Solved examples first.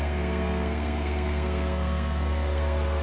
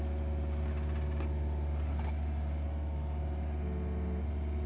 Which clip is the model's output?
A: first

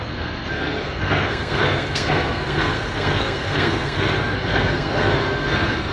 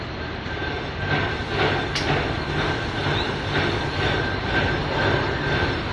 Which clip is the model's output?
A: first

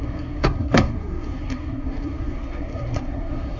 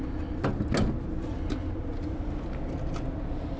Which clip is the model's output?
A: first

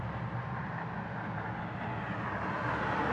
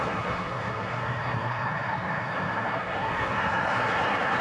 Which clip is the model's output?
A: second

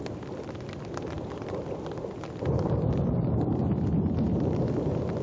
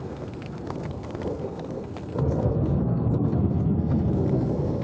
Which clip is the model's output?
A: second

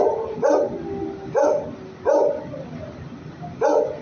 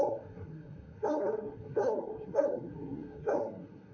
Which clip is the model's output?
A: second